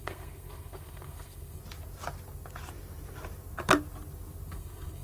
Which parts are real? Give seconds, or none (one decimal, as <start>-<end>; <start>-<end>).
1.6-4.5